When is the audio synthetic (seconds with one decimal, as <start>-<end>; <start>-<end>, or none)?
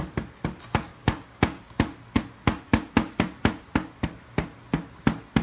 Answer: 0.9-1.6